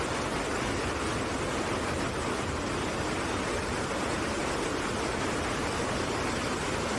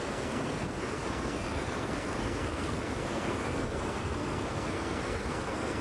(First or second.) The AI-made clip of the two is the second